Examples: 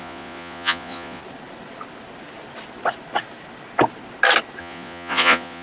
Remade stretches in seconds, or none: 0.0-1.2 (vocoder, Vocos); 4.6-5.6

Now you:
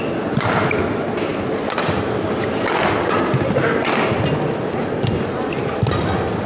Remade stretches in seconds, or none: none

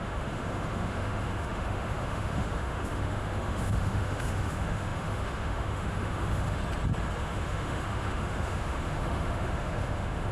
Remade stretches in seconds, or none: 0.0-6.6 (autoencoder, DAC-VAE); 7.2-10.3

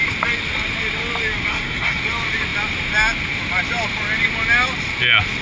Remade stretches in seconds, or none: 1.5-2.0 (codec, SNAC)

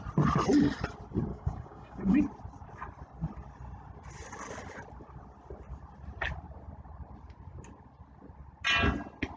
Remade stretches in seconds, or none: 1.3-2.2 (codec, DAC)

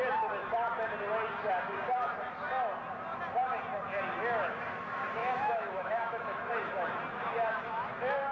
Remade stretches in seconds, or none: 5.2-6.5 (autoencoder, DAC-VAE)